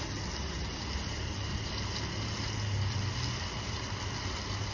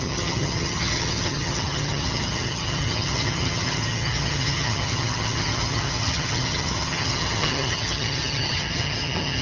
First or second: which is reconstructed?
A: second